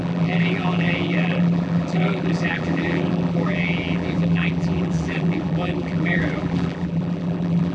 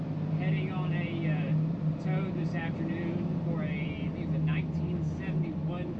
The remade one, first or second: first